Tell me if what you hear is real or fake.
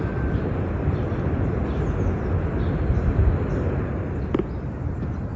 real